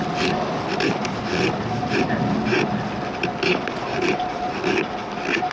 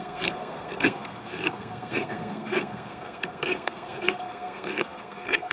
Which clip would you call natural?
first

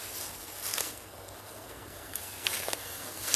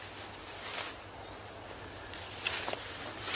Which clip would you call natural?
second